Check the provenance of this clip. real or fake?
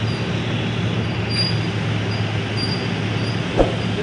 real